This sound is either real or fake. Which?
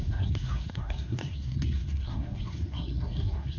fake